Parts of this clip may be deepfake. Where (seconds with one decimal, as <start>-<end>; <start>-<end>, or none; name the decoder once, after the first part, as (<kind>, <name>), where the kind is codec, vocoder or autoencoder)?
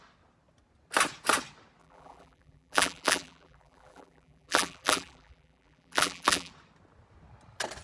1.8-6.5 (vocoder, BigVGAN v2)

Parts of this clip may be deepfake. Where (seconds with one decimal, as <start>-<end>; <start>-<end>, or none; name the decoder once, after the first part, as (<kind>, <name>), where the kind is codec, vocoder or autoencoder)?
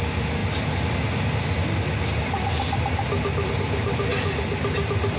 none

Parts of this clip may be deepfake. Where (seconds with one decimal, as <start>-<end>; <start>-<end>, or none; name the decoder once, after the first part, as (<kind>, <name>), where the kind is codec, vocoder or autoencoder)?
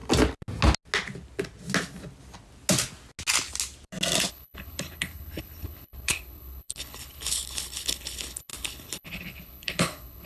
4.3-10.3 (codec, HILCodec)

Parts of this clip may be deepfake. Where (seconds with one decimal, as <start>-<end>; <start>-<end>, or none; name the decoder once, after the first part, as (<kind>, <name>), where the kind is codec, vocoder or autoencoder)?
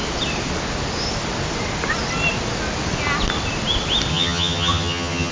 4.1-5.3 (vocoder, HiFi-GAN)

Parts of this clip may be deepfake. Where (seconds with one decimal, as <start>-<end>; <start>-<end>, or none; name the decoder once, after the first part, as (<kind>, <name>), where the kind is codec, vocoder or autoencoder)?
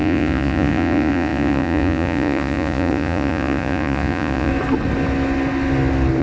0.0-4.5 (vocoder, Vocos)